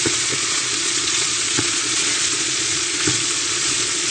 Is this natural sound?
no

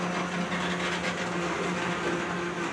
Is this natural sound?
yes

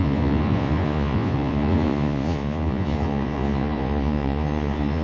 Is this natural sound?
no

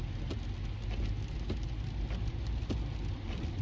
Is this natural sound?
yes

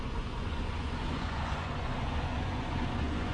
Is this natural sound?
no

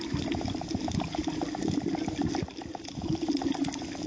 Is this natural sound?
yes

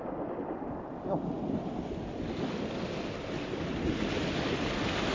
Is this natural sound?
yes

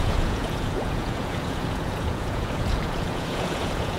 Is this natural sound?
no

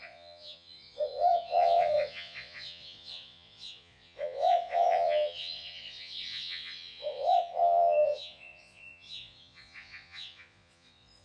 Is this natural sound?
no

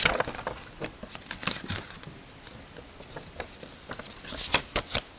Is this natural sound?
yes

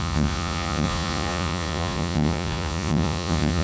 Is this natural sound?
no